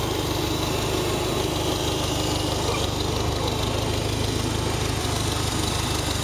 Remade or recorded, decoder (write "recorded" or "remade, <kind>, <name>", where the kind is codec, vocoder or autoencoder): recorded